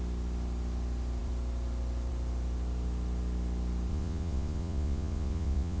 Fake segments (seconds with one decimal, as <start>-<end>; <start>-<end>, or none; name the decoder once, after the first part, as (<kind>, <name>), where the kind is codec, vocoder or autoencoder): 3.9-5.8 (vocoder, Vocos)